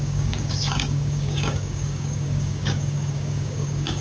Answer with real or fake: fake